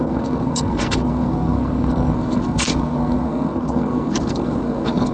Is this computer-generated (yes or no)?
yes